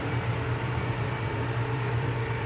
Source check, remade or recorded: remade